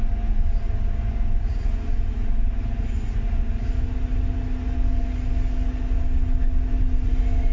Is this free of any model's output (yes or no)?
yes